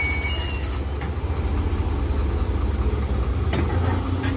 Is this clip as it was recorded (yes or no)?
yes